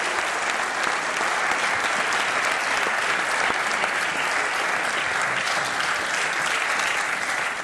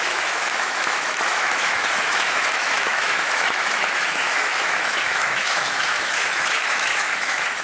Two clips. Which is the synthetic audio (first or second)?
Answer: second